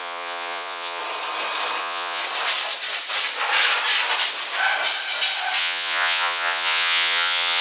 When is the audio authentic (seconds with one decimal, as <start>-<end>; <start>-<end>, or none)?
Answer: 1.0-1.8; 2.2-5.6